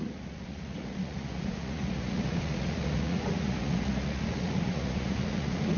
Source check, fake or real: fake